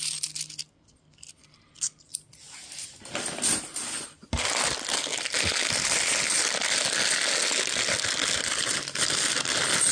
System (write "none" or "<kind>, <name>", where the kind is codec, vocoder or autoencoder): none